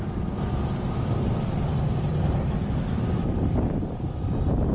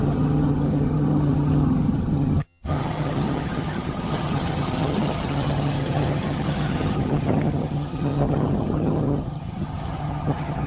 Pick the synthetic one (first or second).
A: second